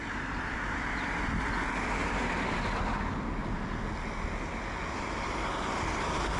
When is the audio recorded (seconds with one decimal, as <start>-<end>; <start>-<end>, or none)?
3.4-4.9